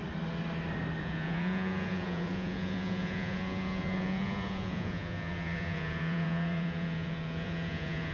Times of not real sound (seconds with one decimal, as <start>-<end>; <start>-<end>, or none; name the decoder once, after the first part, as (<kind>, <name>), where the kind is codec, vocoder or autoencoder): 1.0-8.1 (vocoder, Vocos)

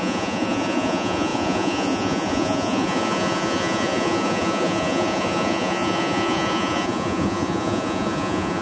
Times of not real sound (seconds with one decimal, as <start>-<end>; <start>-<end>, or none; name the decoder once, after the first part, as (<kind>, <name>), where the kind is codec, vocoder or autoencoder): 0.0-8.6 (vocoder, Vocos)

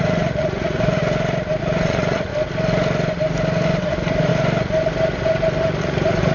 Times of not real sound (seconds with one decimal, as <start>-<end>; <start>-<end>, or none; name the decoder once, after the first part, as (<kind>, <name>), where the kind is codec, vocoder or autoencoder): 0.0-1.0 (vocoder, Vocos); 1.6-2.3; 3.9-4.3; 5.8-6.3

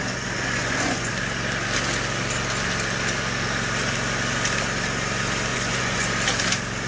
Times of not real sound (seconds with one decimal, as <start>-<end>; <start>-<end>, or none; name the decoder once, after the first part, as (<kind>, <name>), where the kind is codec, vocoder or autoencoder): 0.0-1.1 (vocoder, Vocos); 5.5-6.1

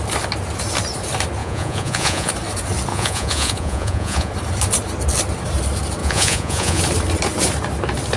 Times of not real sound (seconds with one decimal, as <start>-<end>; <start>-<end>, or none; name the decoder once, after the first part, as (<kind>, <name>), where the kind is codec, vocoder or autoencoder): 1.4-2.3 (vocoder, Vocos); 2.9-4.3; 6.0-6.8

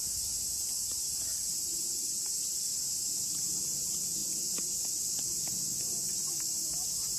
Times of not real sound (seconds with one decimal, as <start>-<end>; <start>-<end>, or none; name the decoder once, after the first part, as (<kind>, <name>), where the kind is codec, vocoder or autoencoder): none

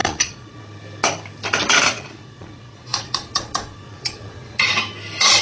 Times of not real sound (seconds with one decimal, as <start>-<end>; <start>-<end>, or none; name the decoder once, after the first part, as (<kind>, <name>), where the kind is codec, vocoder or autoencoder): 0.0-0.6 (vocoder, Vocos); 1.6-4.7

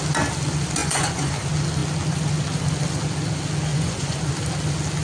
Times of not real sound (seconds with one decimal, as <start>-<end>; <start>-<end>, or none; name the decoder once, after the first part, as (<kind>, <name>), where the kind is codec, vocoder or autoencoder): 0.8-1.3 (vocoder, Vocos); 3.7-4.3